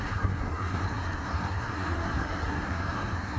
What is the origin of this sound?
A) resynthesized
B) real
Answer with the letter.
A